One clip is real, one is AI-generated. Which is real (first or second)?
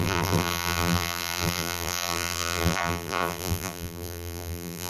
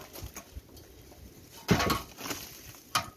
second